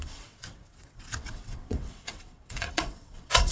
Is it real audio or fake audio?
fake